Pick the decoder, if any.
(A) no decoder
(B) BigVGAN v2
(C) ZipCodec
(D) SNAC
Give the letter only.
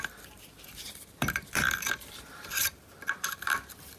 B